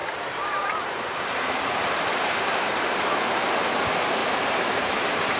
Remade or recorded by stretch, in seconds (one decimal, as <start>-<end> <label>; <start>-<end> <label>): 0.0-4.2 remade; 4.2-4.8 recorded; 4.8-5.4 remade